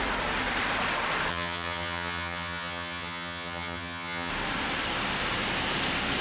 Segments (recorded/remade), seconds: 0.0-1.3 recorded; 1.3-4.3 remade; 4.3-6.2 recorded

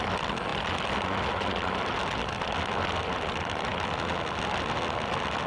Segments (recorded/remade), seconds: 0.0-5.5 recorded

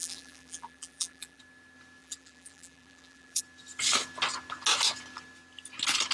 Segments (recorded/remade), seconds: 0.0-1.4 remade; 1.4-2.0 recorded; 2.0-3.4 remade; 3.4-6.1 recorded

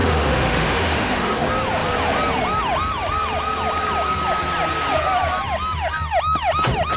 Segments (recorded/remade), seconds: 0.0-1.4 remade; 1.4-7.0 recorded

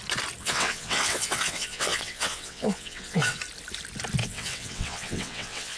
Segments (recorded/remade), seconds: 0.0-0.4 recorded; 0.4-3.4 remade; 3.4-4.2 recorded; 4.2-5.8 remade